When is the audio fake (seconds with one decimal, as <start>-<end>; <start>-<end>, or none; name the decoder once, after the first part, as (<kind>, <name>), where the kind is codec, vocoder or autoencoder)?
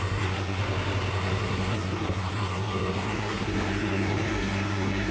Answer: 0.0-0.6 (codec, SNAC); 1.1-5.1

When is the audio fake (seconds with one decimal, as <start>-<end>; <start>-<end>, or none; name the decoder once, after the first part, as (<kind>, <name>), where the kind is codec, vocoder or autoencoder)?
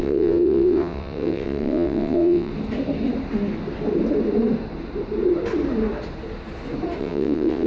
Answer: 0.0-2.5 (vocoder, WaveNeXt); 7.0-7.7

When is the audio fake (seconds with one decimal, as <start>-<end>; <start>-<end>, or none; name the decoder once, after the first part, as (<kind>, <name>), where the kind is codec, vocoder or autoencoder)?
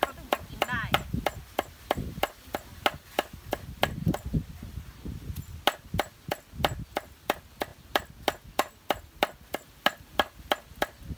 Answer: none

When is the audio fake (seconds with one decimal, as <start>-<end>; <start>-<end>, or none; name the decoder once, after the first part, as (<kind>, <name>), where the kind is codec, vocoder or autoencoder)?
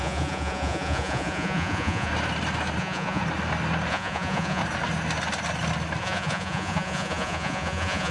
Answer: 0.0-2.1 (vocoder, Vocos); 2.8-3.2; 3.9-4.6; 6.0-8.1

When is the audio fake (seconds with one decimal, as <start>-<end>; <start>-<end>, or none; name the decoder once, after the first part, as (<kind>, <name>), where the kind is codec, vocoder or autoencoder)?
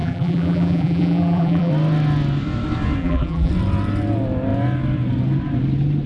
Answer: 0.0-1.7 (vocoder, BigVGAN v2); 3.0-3.5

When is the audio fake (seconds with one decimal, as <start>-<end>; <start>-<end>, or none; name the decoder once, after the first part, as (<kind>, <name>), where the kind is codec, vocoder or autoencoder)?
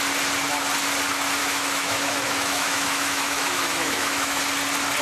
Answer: 1.4-4.4 (autoencoder, DAC-VAE)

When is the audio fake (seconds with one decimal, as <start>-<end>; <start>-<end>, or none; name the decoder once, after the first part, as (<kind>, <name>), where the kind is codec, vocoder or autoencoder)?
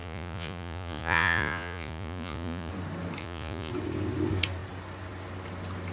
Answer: 0.0-2.7 (vocoder, Vocos); 3.2-3.7